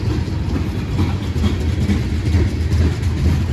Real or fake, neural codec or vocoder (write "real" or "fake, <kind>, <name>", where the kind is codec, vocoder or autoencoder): real